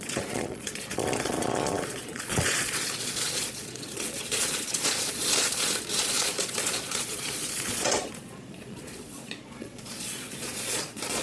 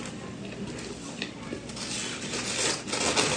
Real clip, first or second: second